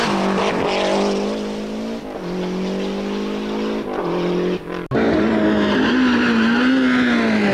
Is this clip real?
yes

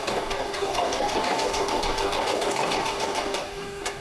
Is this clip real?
no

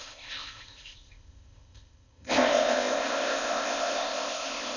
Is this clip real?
no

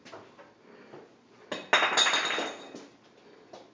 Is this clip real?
yes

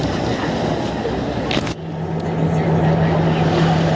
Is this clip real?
yes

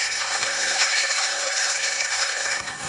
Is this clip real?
no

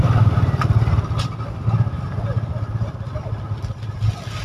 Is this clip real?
yes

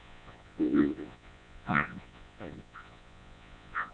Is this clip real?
no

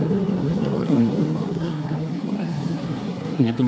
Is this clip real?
no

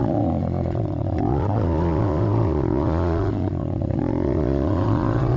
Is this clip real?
no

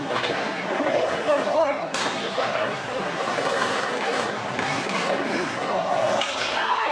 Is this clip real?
no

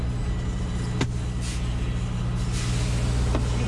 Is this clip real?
yes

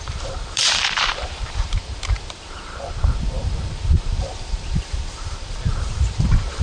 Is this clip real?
no